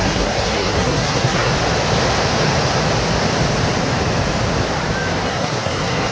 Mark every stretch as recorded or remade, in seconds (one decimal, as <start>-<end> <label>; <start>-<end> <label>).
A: 0.0-1.5 remade; 1.5-5.2 recorded; 5.2-6.1 remade